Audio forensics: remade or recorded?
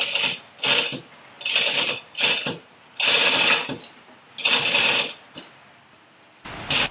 recorded